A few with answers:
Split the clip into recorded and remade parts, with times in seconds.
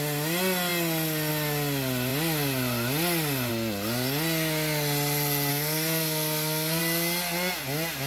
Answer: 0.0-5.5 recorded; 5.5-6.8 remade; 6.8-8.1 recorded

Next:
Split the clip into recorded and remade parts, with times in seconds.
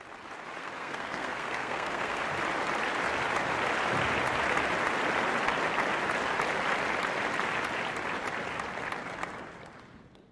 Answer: 0.0-0.6 recorded; 0.6-2.2 remade; 2.2-10.3 recorded